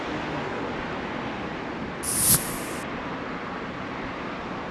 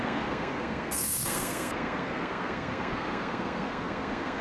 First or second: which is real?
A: first